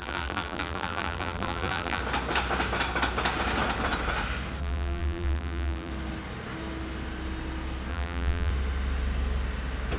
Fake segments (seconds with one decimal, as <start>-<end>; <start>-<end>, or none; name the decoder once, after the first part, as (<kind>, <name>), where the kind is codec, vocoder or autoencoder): 0.0-2.0 (vocoder, BigVGAN v2); 4.6-5.9; 7.9-8.5